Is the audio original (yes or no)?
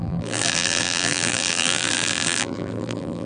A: no